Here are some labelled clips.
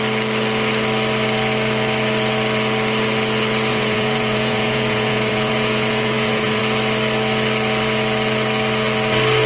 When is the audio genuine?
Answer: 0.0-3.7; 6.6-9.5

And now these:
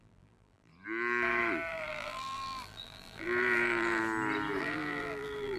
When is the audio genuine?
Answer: 0.7-1.7; 4.0-4.6

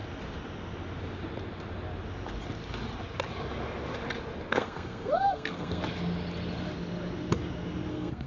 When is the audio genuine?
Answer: 0.0-4.5; 5.8-7.9